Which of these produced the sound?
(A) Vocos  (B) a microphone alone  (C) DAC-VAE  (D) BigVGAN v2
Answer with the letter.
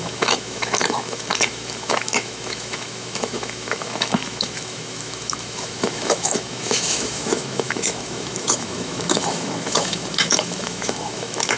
C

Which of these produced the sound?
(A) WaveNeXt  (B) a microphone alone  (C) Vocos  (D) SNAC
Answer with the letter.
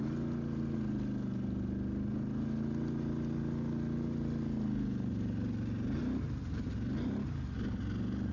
B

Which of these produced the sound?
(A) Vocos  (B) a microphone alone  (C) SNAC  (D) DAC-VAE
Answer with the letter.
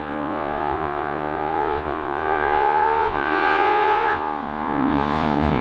A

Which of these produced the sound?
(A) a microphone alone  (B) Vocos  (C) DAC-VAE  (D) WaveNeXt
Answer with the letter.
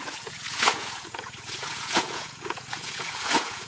B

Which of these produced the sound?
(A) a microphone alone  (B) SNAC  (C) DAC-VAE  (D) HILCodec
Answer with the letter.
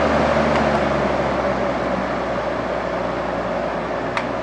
A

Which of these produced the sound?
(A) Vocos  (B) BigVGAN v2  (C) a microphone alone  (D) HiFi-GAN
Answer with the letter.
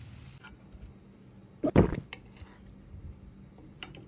C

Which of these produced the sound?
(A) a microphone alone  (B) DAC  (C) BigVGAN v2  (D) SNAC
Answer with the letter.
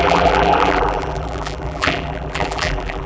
C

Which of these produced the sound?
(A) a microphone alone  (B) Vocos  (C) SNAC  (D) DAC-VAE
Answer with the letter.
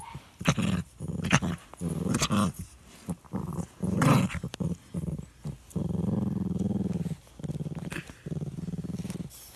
A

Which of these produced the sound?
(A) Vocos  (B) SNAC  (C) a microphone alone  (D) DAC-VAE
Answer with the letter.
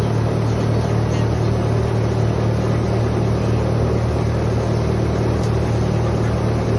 C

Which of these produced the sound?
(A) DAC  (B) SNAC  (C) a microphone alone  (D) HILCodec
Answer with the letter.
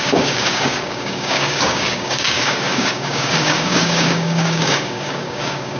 A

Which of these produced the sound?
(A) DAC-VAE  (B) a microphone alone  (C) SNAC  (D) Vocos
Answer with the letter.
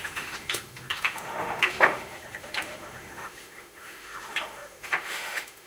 A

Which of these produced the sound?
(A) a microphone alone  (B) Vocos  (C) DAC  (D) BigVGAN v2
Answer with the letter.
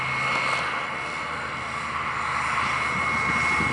A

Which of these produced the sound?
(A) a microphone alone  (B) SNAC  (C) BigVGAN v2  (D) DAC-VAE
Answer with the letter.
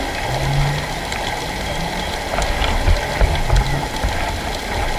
A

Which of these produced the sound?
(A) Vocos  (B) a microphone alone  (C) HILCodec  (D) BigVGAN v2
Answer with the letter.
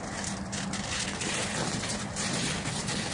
B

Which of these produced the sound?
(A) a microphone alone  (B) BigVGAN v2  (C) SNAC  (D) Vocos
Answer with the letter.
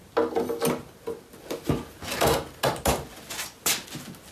A